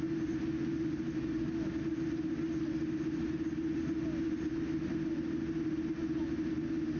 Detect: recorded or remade recorded